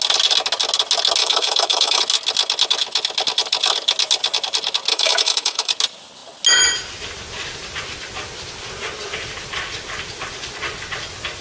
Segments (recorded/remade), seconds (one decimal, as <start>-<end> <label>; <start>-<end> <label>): 0.0-1.2 recorded; 1.2-2.0 remade; 2.0-4.9 recorded; 4.9-5.7 remade; 5.7-11.4 recorded